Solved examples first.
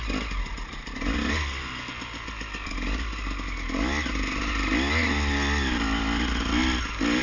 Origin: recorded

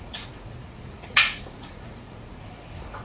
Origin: remade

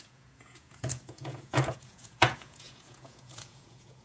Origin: remade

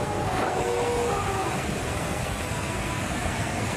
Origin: remade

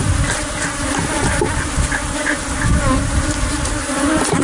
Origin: recorded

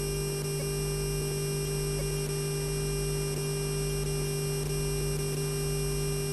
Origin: recorded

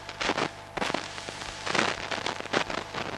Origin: recorded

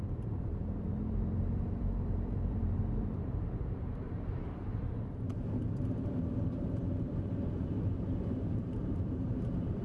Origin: remade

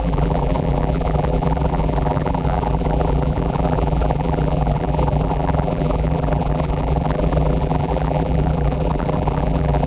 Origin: remade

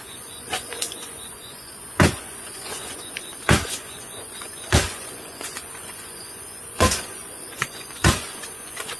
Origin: remade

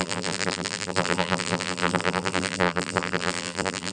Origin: remade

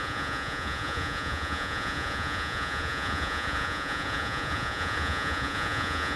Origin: remade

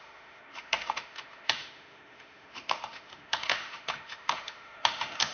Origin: remade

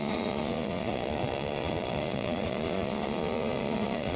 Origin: remade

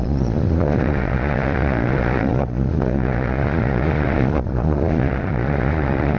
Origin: remade